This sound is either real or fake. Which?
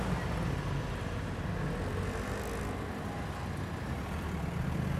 real